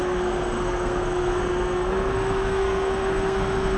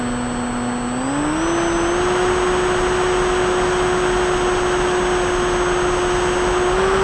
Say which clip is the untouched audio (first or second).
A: second